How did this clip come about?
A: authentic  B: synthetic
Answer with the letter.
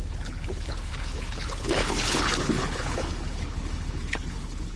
B